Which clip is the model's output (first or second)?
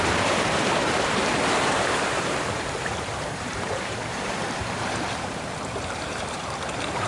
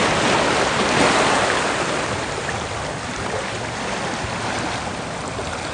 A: first